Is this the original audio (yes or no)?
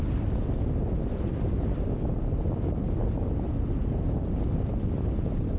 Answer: yes